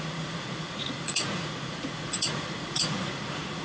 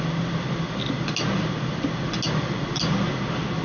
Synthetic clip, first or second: first